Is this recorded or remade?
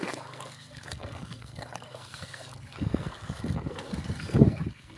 remade